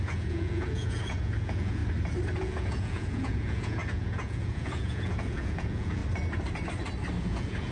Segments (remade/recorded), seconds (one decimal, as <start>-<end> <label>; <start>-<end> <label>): 0.0-1.8 remade; 1.8-2.4 recorded; 2.4-6.0 remade; 6.0-7.2 recorded; 7.2-7.7 remade